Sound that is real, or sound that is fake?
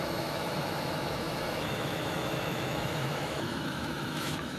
fake